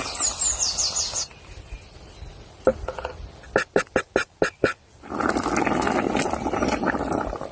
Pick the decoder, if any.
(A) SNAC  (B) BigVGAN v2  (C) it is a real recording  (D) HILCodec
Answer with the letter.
C